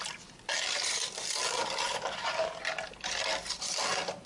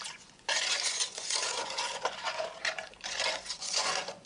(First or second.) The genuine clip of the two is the first